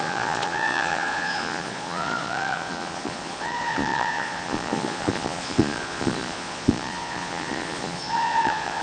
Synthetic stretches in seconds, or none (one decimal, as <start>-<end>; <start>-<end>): 0.0-8.8